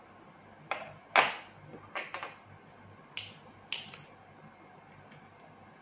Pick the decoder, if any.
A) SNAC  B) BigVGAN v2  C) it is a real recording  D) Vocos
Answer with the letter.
C